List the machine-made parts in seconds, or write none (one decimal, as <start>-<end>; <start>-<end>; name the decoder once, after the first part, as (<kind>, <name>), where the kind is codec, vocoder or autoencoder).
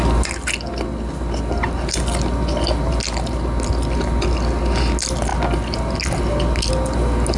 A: none